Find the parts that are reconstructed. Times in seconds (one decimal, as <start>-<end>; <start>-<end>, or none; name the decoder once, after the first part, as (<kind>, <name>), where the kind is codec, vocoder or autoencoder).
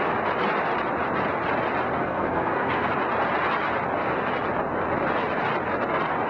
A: 2.0-2.9 (codec, SNAC)